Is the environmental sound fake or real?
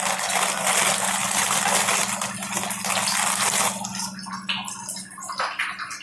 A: real